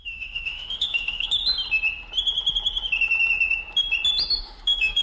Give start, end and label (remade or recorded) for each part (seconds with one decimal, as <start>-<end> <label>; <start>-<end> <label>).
0.0-1.4 remade; 1.4-4.4 recorded; 4.4-5.0 remade